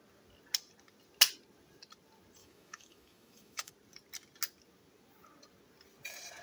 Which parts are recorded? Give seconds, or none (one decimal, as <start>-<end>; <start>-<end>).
0.0-2.4; 3.7-6.4